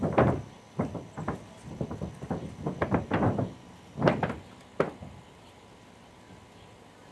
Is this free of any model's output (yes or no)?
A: yes